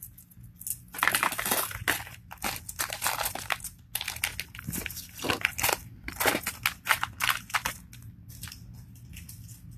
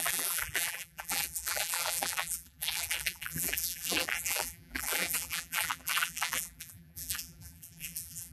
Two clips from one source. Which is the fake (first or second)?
second